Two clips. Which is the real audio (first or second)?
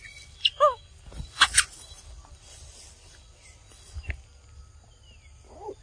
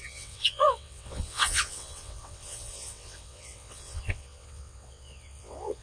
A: first